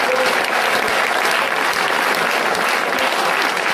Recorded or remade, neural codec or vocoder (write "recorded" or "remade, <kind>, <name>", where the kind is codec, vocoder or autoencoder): recorded